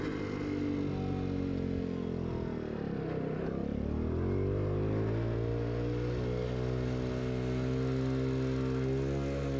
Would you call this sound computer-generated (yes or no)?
no